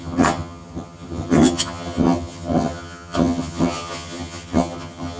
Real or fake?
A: fake